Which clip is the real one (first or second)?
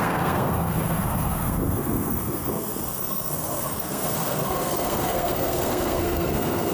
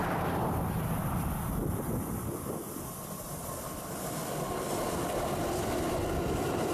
second